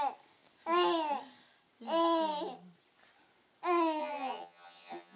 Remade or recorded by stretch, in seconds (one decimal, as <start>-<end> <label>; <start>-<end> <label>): 0.0-4.0 recorded; 4.0-5.2 remade